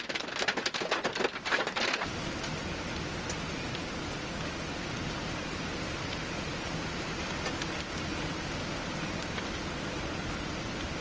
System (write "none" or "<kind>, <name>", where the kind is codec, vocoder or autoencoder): none